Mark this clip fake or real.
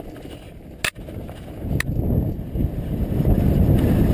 real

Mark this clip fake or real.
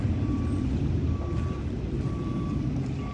real